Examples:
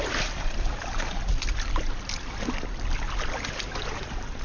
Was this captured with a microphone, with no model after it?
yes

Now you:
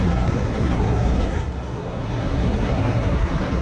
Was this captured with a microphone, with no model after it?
no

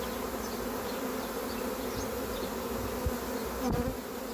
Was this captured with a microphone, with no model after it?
yes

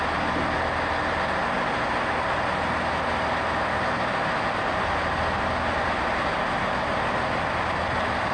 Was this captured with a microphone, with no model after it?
yes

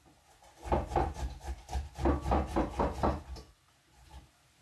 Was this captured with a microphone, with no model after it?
yes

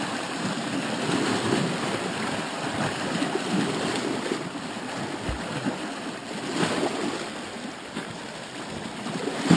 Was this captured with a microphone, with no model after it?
yes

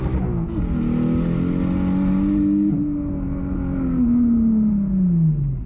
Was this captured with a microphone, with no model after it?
yes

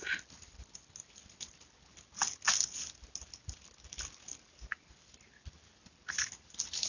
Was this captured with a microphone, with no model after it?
yes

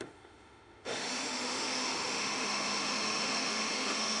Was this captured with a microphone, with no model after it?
no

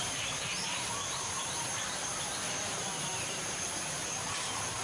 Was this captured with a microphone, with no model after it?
no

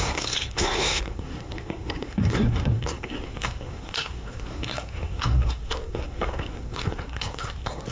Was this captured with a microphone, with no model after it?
no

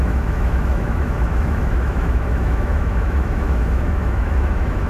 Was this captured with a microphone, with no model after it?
no